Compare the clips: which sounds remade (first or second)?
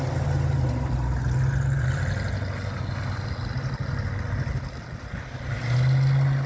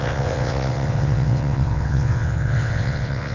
second